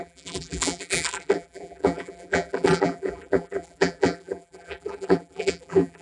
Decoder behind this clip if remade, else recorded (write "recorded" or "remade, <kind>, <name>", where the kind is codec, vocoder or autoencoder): remade, vocoder, BigVGAN v2